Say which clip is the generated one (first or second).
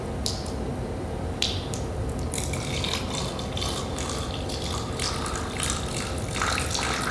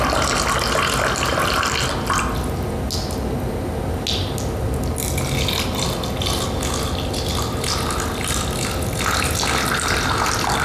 first